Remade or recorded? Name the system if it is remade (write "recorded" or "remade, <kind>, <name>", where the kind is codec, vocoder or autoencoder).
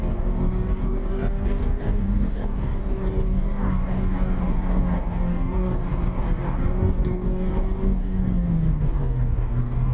remade, codec, DAC